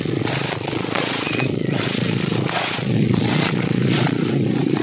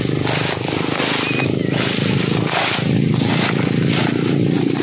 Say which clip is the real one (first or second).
second